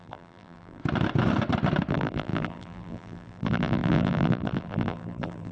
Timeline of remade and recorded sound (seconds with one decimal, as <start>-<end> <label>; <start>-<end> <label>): 0.0-0.8 remade; 0.8-1.9 recorded; 1.9-5.5 remade